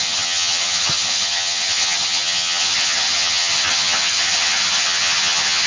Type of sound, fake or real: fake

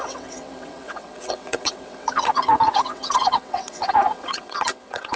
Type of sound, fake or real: fake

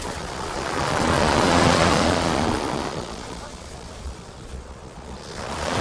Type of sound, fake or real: fake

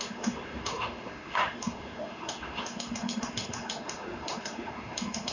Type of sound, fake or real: fake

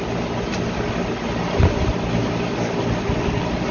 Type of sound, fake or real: real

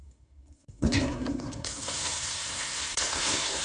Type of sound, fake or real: fake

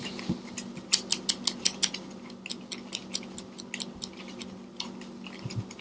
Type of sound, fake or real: real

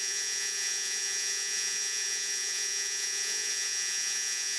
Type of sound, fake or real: fake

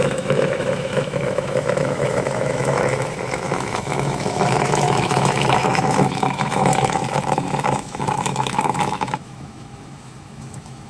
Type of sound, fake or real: fake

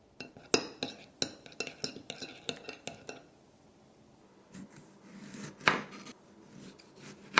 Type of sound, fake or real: real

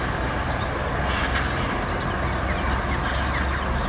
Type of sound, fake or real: real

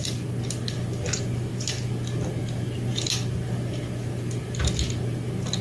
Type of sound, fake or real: real